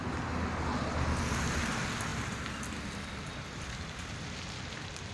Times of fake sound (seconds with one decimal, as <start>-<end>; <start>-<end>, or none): none